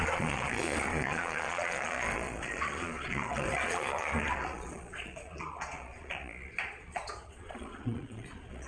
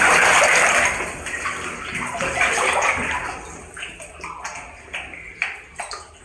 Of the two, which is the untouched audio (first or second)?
second